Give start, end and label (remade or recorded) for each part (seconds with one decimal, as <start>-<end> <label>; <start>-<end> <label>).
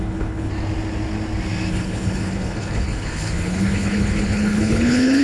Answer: 0.0-0.5 remade; 0.5-1.7 recorded; 1.7-5.2 remade